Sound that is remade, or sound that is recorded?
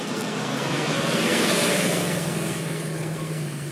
remade